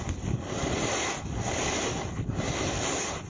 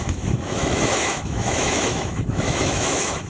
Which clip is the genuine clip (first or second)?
first